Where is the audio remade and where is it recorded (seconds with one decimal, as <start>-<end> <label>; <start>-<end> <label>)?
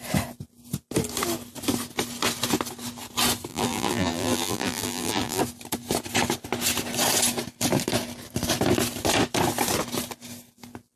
0.0-3.5 recorded; 3.5-5.4 remade; 5.4-11.0 recorded